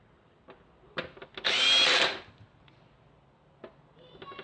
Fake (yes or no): no